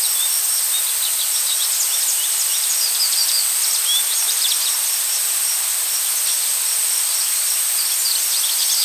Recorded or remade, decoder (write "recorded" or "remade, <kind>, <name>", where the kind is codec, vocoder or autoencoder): recorded